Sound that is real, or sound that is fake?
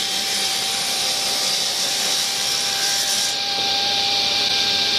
fake